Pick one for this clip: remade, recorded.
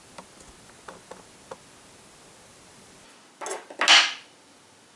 recorded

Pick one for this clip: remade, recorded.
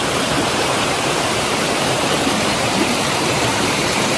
remade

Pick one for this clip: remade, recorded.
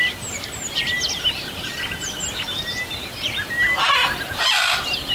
recorded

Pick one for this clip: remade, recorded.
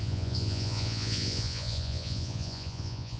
remade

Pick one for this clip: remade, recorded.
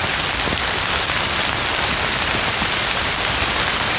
recorded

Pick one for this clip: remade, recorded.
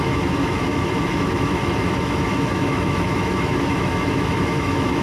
remade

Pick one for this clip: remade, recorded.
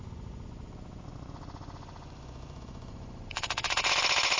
remade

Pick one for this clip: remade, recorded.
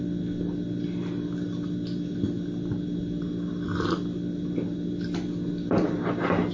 recorded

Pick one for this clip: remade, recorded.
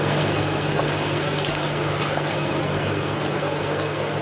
remade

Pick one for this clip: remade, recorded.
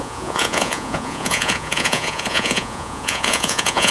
remade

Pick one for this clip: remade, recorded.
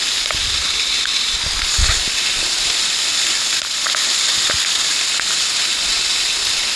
recorded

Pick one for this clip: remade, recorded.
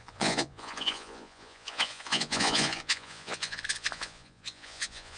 remade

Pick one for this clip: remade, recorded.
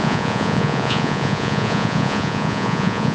remade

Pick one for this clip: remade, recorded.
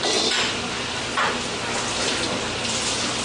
recorded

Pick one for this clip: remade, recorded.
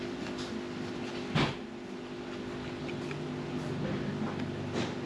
recorded